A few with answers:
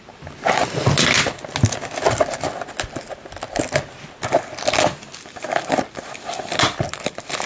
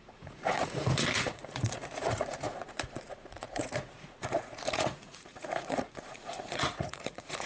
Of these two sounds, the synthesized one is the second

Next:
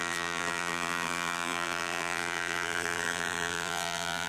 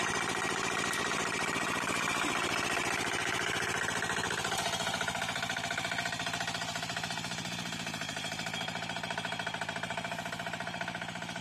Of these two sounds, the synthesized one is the first